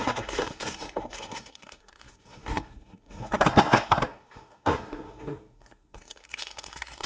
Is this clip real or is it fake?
fake